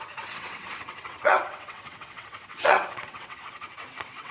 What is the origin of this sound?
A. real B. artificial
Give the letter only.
B